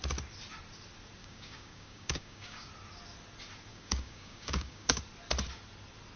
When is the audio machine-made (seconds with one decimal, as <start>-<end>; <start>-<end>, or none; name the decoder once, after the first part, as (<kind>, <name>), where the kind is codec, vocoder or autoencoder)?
1.2-2.7 (codec, DAC); 3.7-5.0

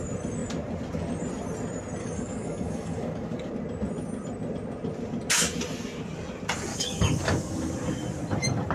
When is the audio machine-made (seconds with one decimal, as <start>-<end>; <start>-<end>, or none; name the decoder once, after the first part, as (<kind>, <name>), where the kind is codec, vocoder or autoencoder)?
2.0-3.5 (codec, DAC); 6.7-7.7

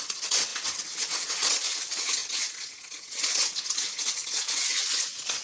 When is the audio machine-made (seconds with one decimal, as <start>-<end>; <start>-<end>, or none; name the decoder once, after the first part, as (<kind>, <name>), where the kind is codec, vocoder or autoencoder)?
0.0-5.4 (vocoder, WaveNeXt)

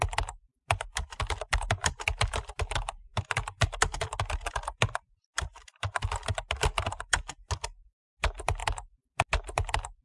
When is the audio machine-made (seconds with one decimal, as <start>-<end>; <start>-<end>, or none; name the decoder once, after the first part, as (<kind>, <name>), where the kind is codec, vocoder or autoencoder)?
none

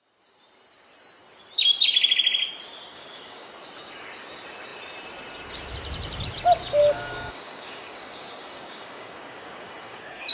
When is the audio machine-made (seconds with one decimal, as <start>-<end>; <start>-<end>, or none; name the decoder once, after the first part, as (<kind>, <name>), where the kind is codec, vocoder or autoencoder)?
2.9-3.5 (codec, DAC); 6.8-10.3

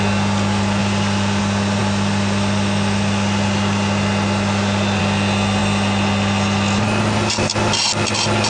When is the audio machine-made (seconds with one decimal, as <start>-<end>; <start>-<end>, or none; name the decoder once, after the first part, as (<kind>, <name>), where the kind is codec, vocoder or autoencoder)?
0.8-1.4 (vocoder, BigVGAN v2)